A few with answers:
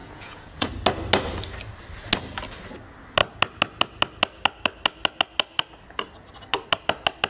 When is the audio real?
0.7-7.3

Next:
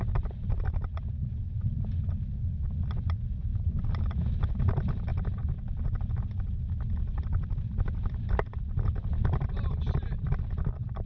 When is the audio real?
0.0-11.1